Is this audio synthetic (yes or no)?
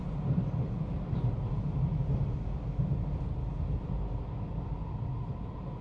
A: no